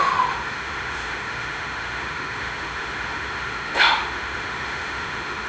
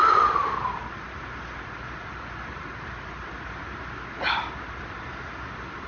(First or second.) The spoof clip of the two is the first